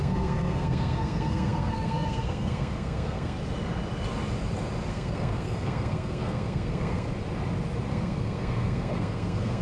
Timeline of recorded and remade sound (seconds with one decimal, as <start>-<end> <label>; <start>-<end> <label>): 0.0-3.4 remade; 3.4-4.9 recorded; 4.9-7.1 remade; 7.1-7.9 recorded; 7.9-9.6 remade